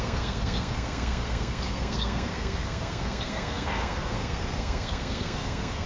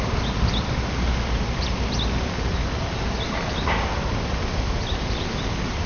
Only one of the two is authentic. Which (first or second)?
second